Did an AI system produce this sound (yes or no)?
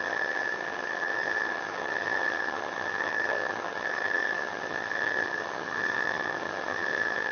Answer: yes